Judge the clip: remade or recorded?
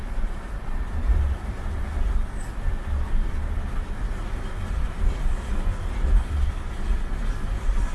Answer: recorded